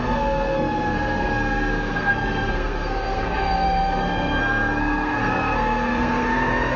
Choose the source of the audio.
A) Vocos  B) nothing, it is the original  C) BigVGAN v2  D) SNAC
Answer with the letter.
D